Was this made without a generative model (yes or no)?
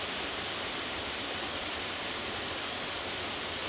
yes